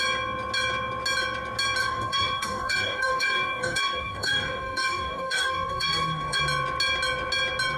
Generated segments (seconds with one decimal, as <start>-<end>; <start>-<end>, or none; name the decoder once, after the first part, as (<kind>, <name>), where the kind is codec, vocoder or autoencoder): 1.8-6.4 (codec, DAC)